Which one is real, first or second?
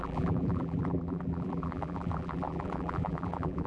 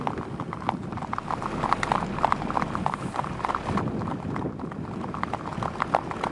second